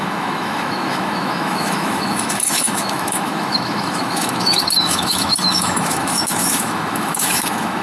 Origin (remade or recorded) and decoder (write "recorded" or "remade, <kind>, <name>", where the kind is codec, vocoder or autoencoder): remade, autoencoder, DAC-VAE